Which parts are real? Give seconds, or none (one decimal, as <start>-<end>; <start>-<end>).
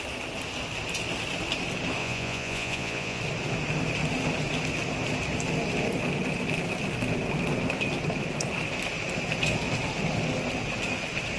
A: 0.0-2.0; 3.2-11.4